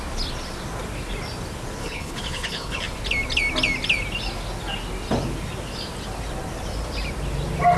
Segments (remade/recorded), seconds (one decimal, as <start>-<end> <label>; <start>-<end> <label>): 0.0-1.8 recorded; 1.8-2.8 remade; 2.8-7.8 recorded

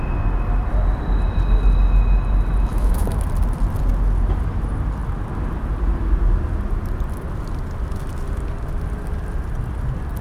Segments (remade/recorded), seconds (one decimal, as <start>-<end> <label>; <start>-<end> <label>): 0.0-2.7 recorded; 2.7-3.2 remade; 3.2-10.2 recorded

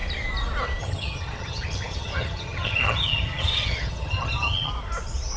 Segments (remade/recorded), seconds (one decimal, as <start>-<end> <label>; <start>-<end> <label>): 0.0-0.8 recorded; 0.8-4.7 remade; 4.7-5.4 recorded

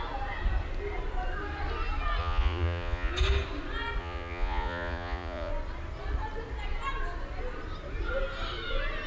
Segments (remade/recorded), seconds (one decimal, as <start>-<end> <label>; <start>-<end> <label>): 0.0-2.2 recorded; 2.2-3.1 remade; 3.1-4.0 recorded; 4.0-5.5 remade; 5.5-9.1 recorded

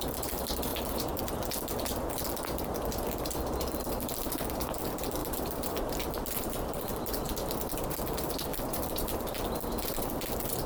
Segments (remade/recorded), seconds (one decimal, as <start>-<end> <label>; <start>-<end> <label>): 0.0-0.7 recorded; 0.7-1.2 remade; 1.2-5.2 recorded; 5.2-6.9 remade; 6.9-8.5 recorded; 8.5-9.6 remade; 9.6-10.7 recorded